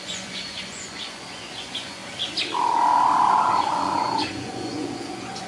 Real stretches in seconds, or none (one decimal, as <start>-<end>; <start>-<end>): 2.0-3.3